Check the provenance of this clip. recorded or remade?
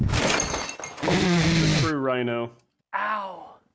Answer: recorded